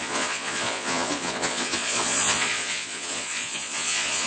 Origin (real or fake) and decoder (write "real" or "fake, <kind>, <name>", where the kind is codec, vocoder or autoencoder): fake, vocoder, Vocos